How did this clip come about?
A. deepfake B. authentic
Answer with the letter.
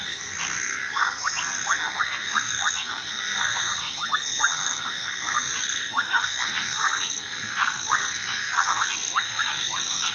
A